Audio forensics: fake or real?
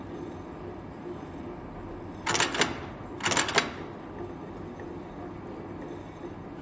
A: real